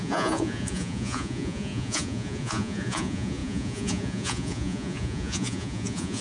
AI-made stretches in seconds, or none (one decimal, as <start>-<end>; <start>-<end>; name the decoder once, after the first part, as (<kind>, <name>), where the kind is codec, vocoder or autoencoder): 0.0-6.2 (vocoder, Vocos)